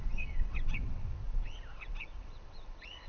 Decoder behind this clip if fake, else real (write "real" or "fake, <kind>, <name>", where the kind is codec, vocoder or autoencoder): fake, vocoder, WaveNeXt